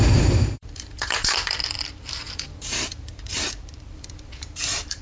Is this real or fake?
fake